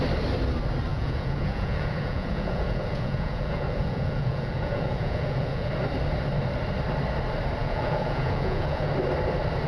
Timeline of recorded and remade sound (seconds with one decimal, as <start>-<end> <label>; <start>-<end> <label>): 0.0-0.9 recorded; 0.9-5.7 remade; 5.7-7.6 recorded; 7.6-8.9 remade; 8.9-9.7 recorded